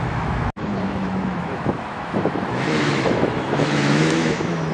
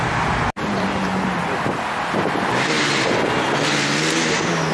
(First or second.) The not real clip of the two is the first